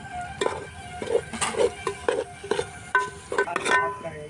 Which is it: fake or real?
real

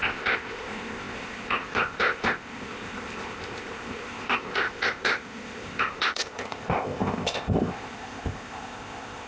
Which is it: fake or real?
fake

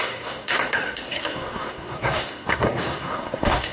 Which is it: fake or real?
fake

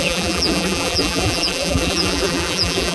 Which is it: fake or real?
fake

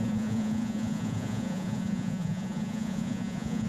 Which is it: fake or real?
fake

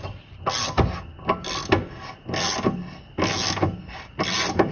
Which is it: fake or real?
real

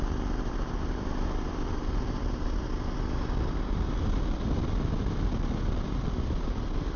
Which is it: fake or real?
real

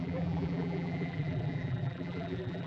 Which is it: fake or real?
fake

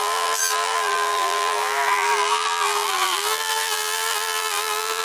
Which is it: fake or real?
fake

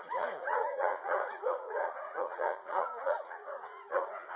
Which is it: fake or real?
fake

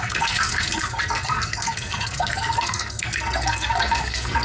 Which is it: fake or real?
fake